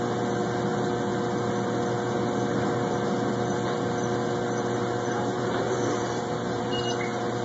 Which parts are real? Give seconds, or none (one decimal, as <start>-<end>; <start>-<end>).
0.0-5.3; 6.7-7.4